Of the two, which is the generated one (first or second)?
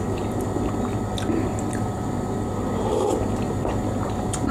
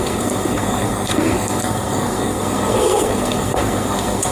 second